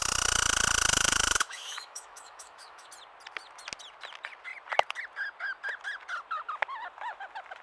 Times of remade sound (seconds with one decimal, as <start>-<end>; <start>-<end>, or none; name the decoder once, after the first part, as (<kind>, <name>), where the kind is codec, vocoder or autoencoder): 0.9-2.9 (autoencoder, DAC-VAE)